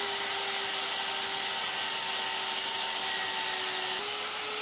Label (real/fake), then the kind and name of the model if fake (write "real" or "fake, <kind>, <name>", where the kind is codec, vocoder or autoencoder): real